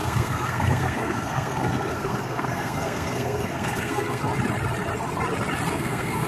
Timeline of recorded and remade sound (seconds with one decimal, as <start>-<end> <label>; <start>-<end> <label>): 0.0-4.3 remade; 4.3-5.7 recorded; 5.7-6.3 remade